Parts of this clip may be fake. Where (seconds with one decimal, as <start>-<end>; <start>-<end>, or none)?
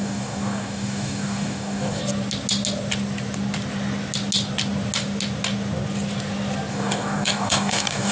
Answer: 0.0-2.0; 6.7-8.1